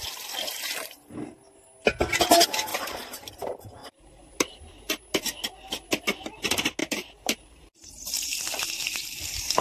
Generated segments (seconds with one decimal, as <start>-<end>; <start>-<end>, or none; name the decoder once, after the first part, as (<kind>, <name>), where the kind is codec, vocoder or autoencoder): 2.7-3.3 (vocoder, BigVGAN v2); 3.8-4.6; 6.8-8.4